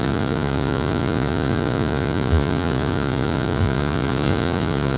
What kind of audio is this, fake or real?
fake